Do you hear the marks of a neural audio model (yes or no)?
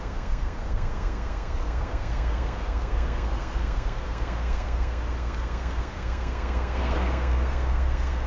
yes